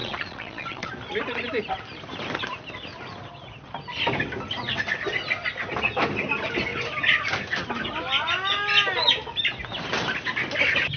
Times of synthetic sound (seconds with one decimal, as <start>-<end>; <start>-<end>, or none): 0.0-0.9